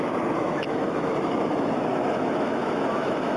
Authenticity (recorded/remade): remade